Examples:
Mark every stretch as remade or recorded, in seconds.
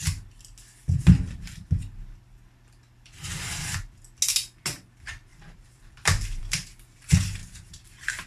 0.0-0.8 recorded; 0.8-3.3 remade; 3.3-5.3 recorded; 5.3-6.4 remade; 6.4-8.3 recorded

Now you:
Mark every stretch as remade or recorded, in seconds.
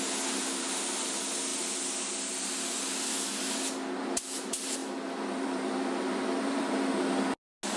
0.0-4.8 recorded; 4.8-6.9 remade; 6.9-7.8 recorded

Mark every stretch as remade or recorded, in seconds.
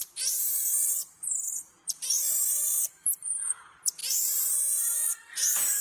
0.0-5.8 remade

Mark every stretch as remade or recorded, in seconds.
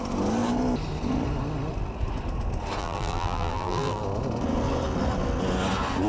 0.0-2.8 recorded; 2.8-4.0 remade; 4.0-6.1 recorded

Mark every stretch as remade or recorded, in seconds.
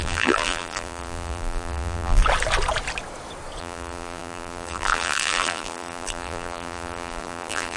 0.0-2.2 remade; 2.2-3.6 recorded; 3.6-7.8 remade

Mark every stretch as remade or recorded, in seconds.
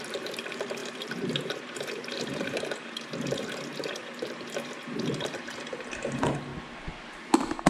0.0-6.5 remade; 6.5-7.7 recorded